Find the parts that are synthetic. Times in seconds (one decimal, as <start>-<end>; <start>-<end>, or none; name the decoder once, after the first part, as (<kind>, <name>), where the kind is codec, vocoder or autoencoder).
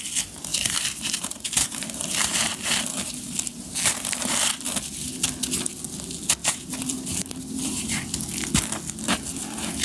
0.5-4.8 (vocoder, BigVGAN v2); 6.4-7.9